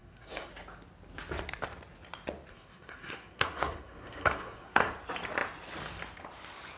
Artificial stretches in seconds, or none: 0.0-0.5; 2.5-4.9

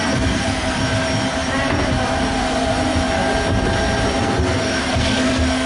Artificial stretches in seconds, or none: 0.0-0.8; 4.2-5.7

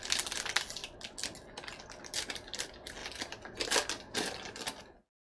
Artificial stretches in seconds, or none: none